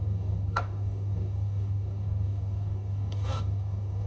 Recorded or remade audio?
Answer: remade